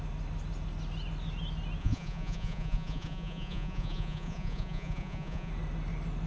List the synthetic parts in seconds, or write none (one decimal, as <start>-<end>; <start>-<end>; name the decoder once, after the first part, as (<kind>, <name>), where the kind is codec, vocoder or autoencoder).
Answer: 1.8-5.5 (vocoder, Vocos)